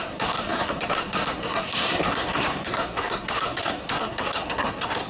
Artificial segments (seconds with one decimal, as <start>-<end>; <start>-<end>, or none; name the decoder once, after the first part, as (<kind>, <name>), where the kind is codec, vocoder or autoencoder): 0.0-5.1 (codec, SNAC)